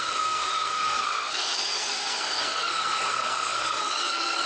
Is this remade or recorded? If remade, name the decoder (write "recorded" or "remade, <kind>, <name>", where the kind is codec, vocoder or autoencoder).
remade, codec, SNAC